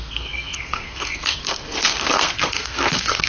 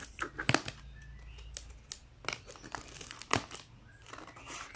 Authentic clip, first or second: second